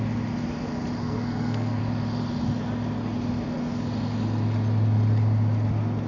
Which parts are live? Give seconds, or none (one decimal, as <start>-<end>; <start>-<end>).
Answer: 0.0-1.0; 1.8-6.1